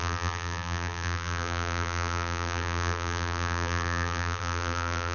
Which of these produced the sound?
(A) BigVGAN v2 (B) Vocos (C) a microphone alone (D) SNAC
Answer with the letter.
A